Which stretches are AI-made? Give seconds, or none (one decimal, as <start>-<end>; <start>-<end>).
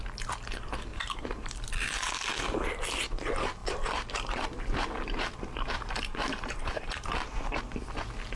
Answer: 0.9-1.5; 3.6-7.6